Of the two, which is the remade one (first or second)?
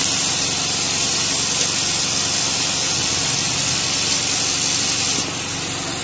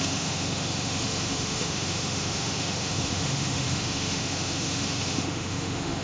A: second